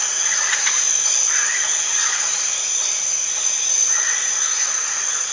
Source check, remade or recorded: remade